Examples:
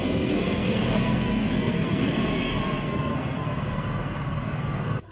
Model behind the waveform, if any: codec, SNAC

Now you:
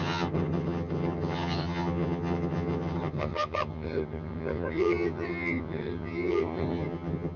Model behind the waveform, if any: vocoder, HiFi-GAN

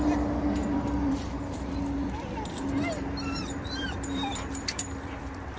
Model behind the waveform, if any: vocoder, BigVGAN v2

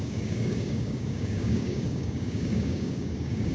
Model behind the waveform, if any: codec, DAC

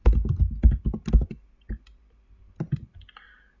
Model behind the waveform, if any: none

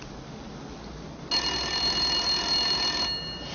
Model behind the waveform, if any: none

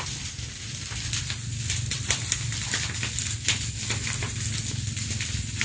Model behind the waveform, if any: none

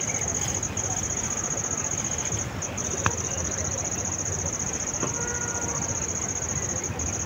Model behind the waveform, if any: none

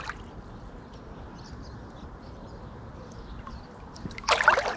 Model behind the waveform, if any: none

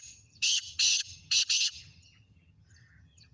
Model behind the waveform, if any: vocoder, HiFi-GAN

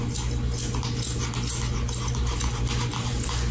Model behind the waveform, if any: none